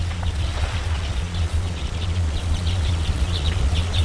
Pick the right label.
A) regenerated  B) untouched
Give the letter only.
A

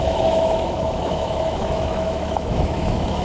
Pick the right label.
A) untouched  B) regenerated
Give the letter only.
B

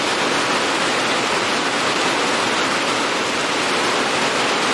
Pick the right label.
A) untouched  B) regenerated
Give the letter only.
A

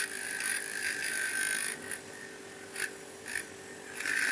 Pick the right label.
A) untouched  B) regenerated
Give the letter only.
A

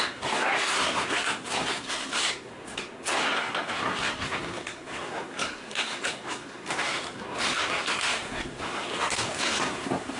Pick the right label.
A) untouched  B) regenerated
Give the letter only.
B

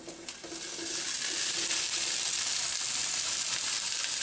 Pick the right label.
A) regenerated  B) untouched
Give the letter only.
B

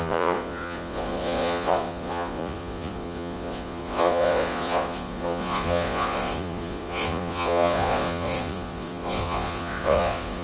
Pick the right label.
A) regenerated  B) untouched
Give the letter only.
A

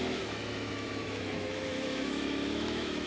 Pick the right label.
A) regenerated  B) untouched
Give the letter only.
A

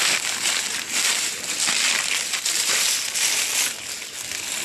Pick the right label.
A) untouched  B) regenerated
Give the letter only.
A